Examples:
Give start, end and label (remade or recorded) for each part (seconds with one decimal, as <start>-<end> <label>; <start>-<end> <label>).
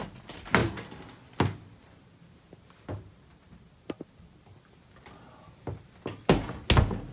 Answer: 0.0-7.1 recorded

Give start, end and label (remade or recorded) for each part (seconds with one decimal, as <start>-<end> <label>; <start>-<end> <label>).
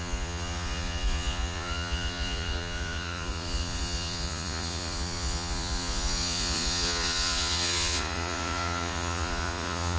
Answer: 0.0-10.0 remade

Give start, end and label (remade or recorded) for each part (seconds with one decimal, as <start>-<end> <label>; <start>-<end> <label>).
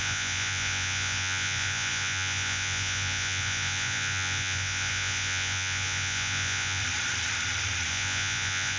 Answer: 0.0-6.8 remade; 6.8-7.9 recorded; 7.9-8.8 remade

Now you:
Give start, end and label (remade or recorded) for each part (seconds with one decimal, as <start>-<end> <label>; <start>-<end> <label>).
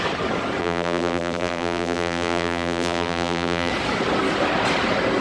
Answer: 0.0-0.6 recorded; 0.6-3.7 remade; 3.7-5.2 recorded